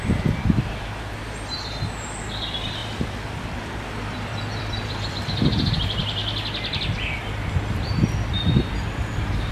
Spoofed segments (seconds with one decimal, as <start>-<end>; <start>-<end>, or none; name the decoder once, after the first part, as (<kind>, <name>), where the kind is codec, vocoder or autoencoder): 0.0-6.2 (vocoder, BigVGAN v2); 7.9-9.5